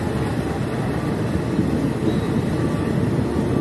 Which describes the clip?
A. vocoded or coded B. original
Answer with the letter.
B